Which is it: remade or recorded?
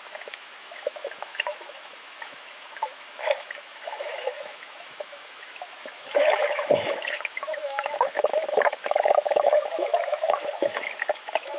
remade